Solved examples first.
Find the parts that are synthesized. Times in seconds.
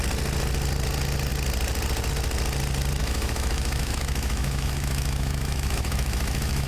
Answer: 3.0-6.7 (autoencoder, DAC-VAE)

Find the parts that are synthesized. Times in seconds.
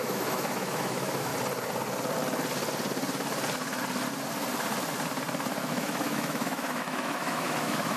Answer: 0.0-1.3 (autoencoder, DAC-VAE); 5.7-8.0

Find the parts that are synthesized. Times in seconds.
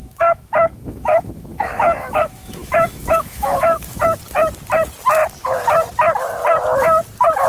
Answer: 0.0-4.0 (autoencoder, DAC-VAE)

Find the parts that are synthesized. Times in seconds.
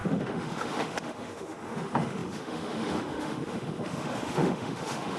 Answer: 0.0-5.2 (autoencoder, DAC-VAE)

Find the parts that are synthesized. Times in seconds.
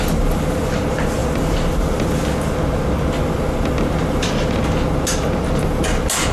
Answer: none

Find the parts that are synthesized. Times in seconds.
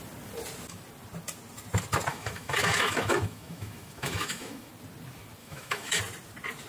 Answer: 2.1-4.7 (autoencoder, DAC-VAE); 5.4-6.0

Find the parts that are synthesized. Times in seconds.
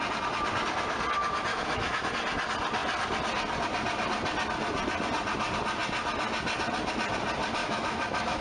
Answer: 1.5-2.1 (autoencoder, DAC-VAE); 7.6-8.4